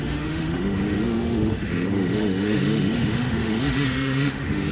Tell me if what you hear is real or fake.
fake